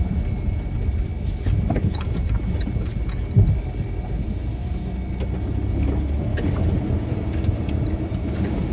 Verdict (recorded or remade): recorded